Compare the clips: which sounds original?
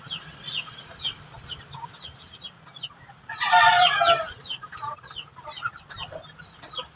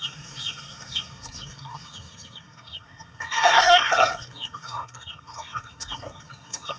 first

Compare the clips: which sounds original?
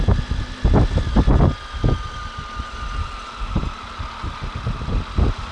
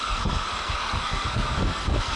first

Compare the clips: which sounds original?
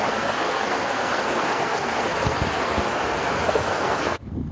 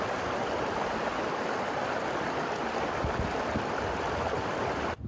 second